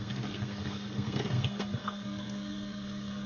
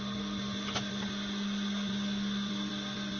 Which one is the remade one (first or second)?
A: first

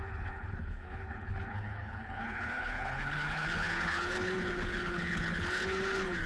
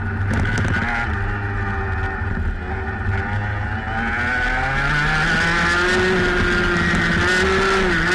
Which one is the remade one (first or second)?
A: first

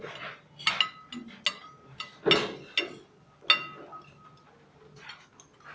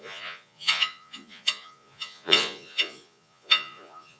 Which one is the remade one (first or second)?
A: second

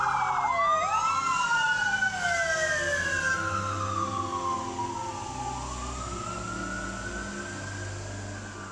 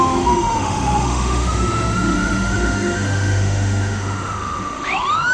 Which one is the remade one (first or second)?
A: second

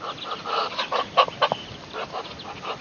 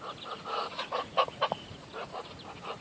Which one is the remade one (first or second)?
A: second